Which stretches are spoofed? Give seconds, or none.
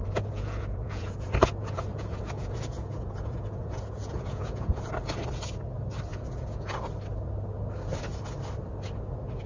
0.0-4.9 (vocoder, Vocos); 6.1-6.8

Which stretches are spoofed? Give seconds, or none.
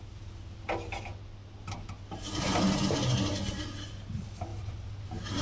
none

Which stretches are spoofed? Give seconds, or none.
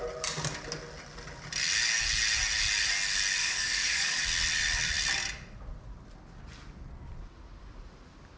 3.4-4.2 (codec, DAC)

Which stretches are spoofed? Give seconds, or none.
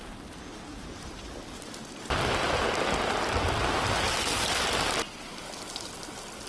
0.7-1.3 (vocoder, BigVGAN v2)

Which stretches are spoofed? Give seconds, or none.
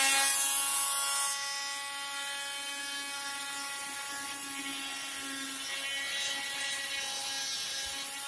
none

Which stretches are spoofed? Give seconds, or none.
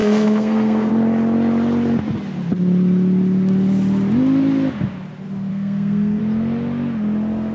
0.0-0.9 (codec, SNAC); 5.5-6.2